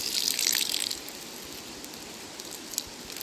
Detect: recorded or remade remade